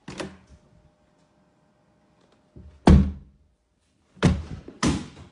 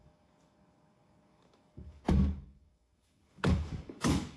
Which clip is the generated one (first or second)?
second